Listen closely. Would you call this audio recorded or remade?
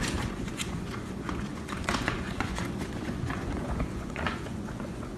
remade